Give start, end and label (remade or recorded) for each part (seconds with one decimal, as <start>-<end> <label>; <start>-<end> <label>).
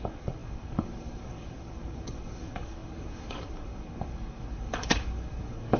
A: 0.0-5.8 remade